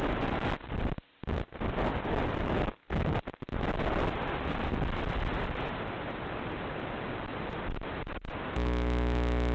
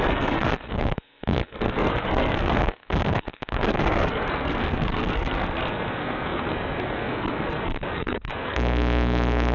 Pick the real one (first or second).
first